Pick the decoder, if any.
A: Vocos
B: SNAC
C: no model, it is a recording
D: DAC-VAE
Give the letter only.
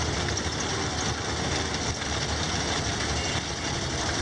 C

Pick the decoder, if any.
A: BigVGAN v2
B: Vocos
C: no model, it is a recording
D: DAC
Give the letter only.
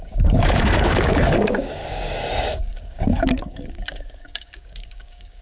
D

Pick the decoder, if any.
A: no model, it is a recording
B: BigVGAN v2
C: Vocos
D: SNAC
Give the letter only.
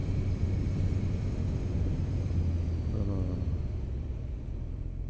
A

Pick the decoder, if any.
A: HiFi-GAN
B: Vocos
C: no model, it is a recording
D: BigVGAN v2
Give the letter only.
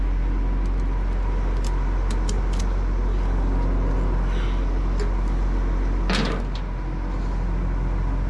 C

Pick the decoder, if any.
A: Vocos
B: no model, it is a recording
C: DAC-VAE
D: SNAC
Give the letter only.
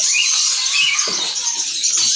B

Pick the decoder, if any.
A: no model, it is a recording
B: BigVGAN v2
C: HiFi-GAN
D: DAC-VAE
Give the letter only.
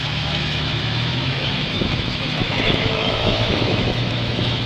D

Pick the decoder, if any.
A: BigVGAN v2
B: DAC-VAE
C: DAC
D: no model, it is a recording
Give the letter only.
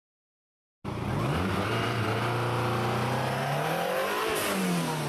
D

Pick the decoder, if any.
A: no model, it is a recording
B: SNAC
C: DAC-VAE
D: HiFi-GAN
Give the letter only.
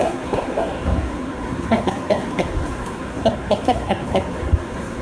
B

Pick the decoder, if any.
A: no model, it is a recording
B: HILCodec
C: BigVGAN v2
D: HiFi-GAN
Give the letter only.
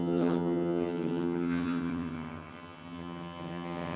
D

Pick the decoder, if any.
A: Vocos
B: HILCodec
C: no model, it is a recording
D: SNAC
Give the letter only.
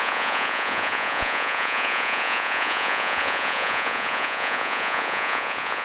A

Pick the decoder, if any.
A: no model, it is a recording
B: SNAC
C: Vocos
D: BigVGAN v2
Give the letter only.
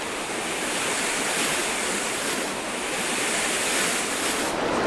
A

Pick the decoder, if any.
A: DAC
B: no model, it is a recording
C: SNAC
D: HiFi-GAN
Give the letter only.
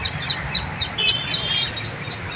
B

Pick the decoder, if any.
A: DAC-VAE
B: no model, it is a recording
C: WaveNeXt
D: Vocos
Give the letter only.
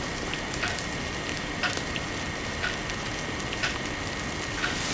B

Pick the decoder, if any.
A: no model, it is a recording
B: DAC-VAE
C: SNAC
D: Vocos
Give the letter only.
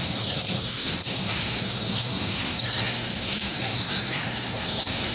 C